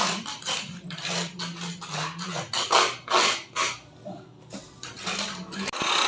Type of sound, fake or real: real